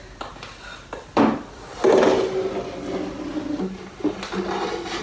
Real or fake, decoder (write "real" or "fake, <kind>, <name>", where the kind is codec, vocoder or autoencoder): real